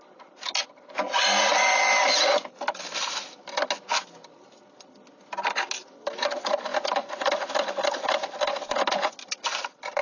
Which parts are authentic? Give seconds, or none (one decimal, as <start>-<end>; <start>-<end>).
0.0-10.0